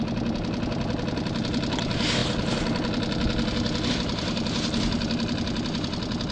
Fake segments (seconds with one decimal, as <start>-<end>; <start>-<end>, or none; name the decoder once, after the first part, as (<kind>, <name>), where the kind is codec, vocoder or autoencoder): none